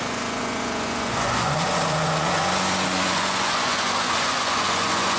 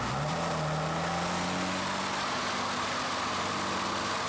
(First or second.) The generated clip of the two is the first